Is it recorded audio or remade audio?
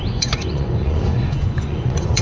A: remade